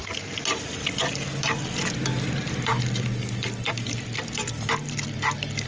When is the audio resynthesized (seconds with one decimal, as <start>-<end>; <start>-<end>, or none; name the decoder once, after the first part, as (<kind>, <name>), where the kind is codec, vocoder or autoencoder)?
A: 2.7-5.7 (vocoder, BigVGAN v2)